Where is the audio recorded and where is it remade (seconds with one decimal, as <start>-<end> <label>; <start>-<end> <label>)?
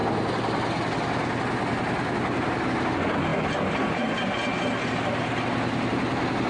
0.0-6.5 recorded